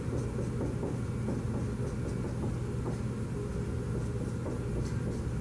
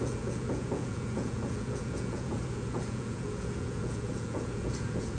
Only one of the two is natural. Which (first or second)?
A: first